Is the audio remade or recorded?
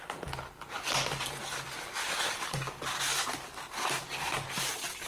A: recorded